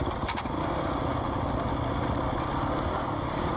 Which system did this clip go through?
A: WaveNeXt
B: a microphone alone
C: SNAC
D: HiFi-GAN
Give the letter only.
B